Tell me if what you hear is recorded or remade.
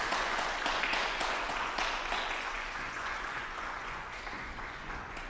remade